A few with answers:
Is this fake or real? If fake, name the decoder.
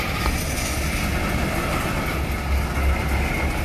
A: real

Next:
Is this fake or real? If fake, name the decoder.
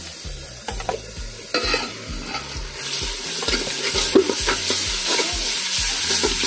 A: real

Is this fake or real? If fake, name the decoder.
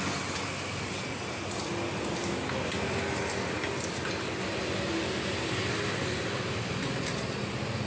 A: real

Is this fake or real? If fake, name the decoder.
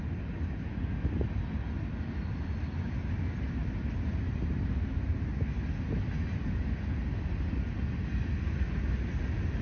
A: real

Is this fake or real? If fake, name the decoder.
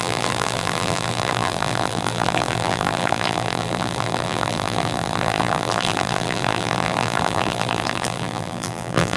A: fake, vocoder, BigVGAN v2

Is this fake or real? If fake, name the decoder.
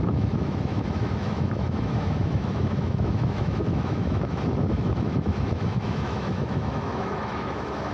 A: fake, autoencoder, DAC-VAE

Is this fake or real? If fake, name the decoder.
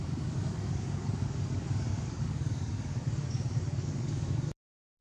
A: fake, codec, DAC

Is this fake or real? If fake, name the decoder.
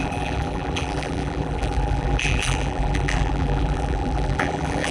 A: fake, vocoder, BigVGAN v2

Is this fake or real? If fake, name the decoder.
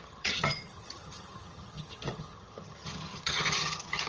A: fake, vocoder, HiFi-GAN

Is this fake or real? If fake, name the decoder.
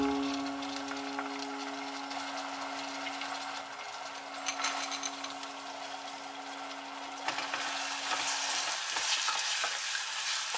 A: real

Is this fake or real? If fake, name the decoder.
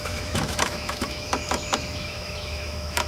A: fake, autoencoder, DAC-VAE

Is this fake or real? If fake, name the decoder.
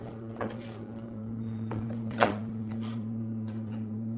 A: fake, vocoder, Vocos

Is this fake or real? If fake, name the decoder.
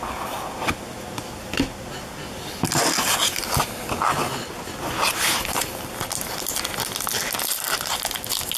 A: real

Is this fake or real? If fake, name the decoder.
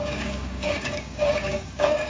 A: fake, codec, DAC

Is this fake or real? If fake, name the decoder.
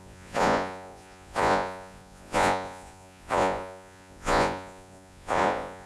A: fake, vocoder, Vocos